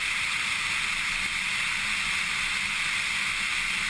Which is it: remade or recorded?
recorded